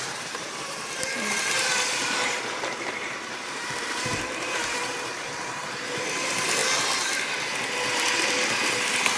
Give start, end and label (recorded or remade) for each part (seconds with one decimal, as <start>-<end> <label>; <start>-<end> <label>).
0.0-6.6 remade; 6.6-9.2 recorded